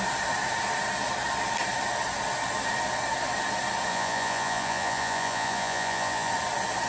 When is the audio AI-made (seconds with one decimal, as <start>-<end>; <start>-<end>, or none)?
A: 3.9-6.3